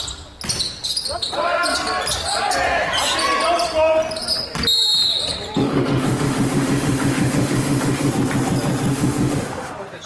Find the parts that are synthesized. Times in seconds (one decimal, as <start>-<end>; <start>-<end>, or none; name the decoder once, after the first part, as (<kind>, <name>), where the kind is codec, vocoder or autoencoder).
5.6-8.1 (autoencoder, DAC-VAE); 8.9-9.7